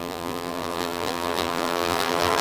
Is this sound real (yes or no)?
no